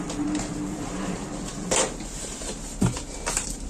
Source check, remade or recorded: remade